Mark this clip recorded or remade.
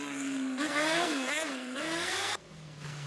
remade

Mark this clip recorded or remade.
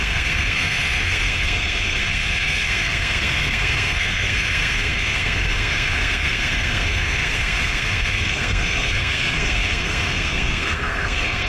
remade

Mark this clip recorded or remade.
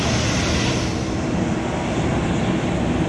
recorded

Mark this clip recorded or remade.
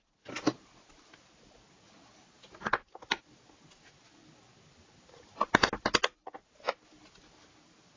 recorded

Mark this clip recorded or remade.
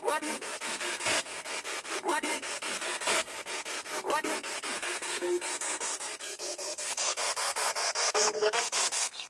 remade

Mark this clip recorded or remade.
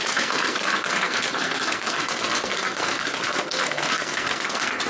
remade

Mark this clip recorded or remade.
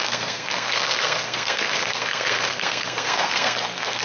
remade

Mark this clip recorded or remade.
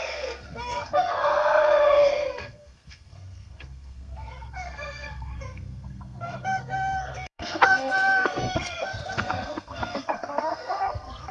remade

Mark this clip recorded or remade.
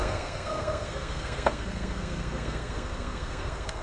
remade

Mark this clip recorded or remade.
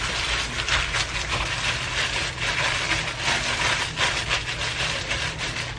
recorded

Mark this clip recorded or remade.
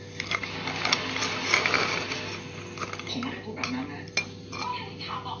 recorded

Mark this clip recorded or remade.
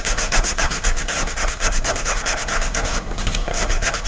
remade